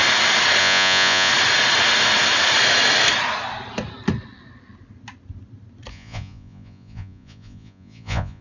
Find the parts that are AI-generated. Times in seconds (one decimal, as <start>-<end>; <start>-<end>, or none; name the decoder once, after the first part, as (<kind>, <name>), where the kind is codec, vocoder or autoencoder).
0.6-1.3 (vocoder, Vocos); 5.9-8.4

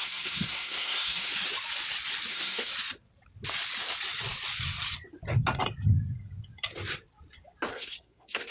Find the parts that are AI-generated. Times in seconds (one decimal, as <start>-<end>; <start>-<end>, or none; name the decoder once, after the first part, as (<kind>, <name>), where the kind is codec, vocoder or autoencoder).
0.0-1.3 (codec, SNAC); 2.3-2.7; 7.7-8.5

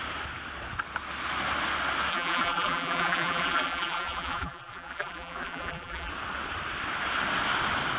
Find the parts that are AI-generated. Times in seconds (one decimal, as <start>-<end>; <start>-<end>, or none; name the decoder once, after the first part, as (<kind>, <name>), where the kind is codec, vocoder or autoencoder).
2.1-6.1 (vocoder, BigVGAN v2)

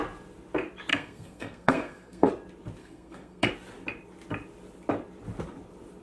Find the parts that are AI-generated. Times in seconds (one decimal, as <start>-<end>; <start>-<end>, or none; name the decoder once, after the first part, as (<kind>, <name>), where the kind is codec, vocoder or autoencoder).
0.9-2.3 (codec, SNAC); 2.8-3.5

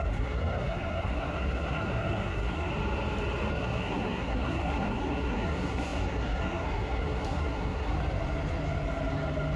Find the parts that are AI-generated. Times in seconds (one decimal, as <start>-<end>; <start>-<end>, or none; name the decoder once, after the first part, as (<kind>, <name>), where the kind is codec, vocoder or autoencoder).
0.0-2.7 (codec, SNAC); 3.5-7.9

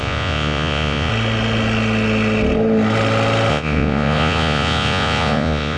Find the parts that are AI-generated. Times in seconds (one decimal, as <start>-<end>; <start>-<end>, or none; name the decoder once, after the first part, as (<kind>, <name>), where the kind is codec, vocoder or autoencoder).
0.0-1.1 (vocoder, Vocos); 3.5-5.8

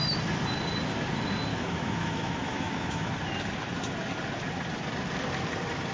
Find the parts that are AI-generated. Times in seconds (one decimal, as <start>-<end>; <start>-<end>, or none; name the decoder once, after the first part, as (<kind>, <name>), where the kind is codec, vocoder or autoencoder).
1.5-3.1 (autoencoder, DAC-VAE)

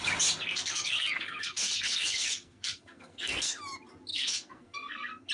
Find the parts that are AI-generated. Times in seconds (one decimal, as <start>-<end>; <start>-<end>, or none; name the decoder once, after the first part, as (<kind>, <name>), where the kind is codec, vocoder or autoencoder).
0.4-3.6 (codec, SNAC); 4.1-5.3